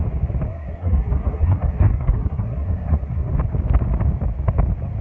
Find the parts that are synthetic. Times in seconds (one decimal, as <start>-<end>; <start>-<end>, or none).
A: 0.5-3.3